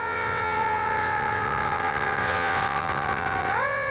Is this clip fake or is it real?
fake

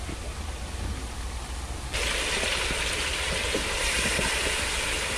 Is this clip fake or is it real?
real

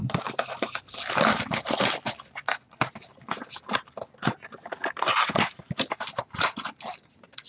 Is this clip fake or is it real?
real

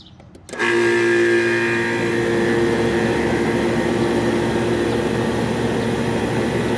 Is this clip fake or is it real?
real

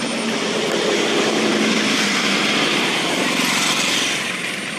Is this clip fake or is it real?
real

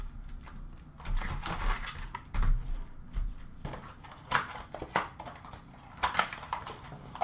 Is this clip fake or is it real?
real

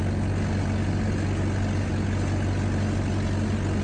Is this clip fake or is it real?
real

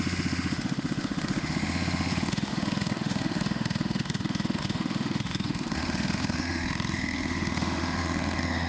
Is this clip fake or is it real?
fake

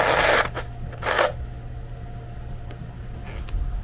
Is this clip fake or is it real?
real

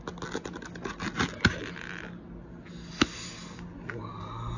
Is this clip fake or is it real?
real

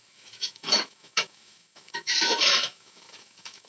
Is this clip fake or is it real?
fake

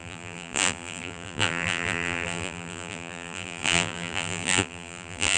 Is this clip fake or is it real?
fake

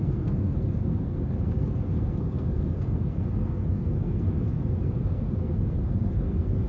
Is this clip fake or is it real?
fake